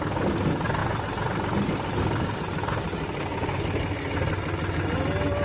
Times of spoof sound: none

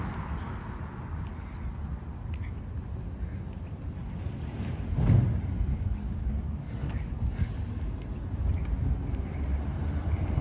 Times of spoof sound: 5.7-7.5 (codec, DAC)

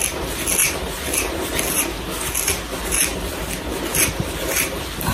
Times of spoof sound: none

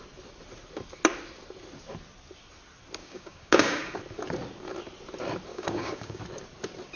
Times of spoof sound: 3.0-4.0 (codec, DAC); 5.5-6.2

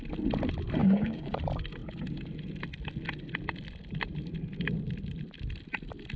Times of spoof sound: 0.8-1.4 (codec, DAC)

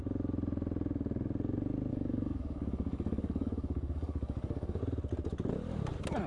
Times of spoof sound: 1.9-4.8 (codec, DAC)

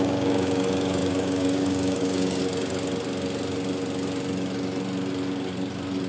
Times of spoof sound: 0.0-2.4 (codec, DAC)